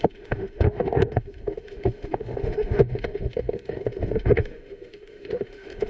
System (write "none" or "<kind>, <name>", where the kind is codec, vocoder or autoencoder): autoencoder, DAC-VAE